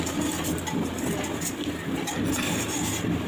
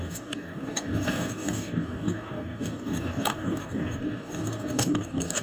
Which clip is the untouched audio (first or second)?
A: first